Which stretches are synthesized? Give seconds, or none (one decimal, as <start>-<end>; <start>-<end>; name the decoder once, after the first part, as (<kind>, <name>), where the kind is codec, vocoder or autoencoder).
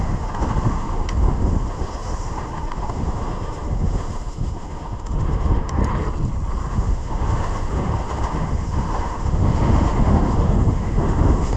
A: 0.0-5.8 (autoencoder, DAC-VAE); 6.7-11.6